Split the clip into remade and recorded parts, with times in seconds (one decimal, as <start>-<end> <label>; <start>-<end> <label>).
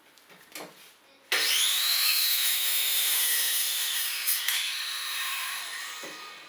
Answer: 0.0-1.7 recorded; 1.7-5.6 remade; 5.6-6.5 recorded